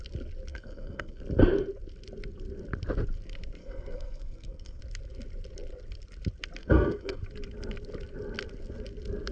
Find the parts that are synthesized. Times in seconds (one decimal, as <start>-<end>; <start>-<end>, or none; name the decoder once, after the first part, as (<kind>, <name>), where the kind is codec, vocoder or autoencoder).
0.5-1.2 (codec, SNAC); 3.6-4.8; 6.6-7.2

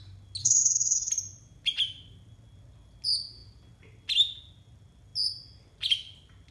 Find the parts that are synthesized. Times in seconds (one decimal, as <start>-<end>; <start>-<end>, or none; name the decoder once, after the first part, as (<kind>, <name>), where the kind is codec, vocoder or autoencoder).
0.4-1.1 (codec, SNAC)